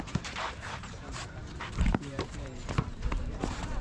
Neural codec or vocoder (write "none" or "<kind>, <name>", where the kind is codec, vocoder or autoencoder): vocoder, BigVGAN v2